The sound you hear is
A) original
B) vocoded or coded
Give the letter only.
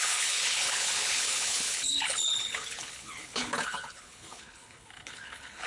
B